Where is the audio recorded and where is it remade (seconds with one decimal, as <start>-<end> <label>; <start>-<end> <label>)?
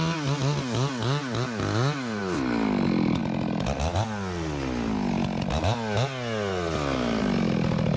0.0-8.0 recorded